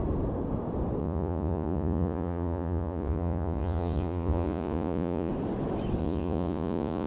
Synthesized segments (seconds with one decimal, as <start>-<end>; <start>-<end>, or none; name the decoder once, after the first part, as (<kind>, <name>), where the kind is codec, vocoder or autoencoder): 1.0-5.3 (vocoder, Vocos); 6.0-7.1